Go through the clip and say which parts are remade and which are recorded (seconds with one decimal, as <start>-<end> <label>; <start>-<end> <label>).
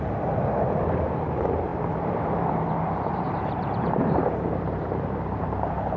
0.0-6.0 remade